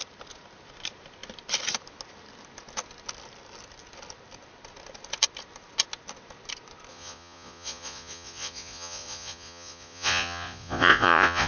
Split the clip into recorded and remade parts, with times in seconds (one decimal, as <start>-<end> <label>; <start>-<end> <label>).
0.0-6.9 recorded; 6.9-11.5 remade